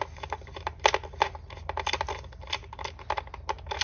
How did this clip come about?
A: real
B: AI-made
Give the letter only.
A